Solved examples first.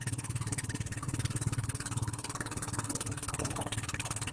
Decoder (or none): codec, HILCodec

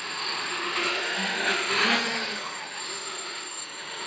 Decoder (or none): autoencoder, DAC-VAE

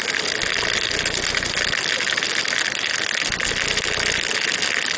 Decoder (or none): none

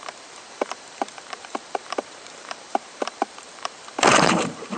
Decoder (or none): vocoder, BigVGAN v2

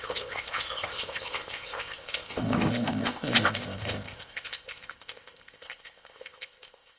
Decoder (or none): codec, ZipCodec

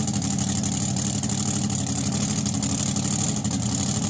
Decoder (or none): none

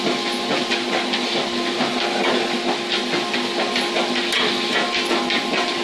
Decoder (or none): none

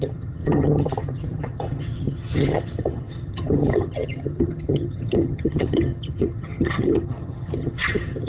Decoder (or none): vocoder, HiFi-GAN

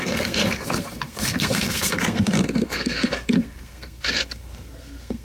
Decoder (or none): codec, SNAC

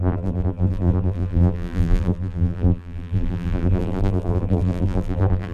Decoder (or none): vocoder, BigVGAN v2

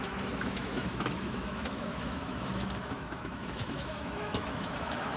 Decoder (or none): autoencoder, DAC-VAE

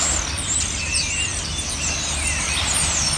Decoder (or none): none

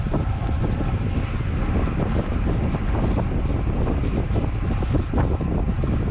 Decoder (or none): none